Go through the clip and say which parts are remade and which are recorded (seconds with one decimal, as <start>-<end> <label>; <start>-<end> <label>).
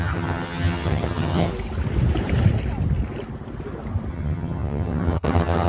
0.0-1.5 remade; 1.5-4.1 recorded; 4.1-5.7 remade